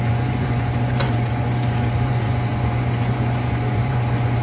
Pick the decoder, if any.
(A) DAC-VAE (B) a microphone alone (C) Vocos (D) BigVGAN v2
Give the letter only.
C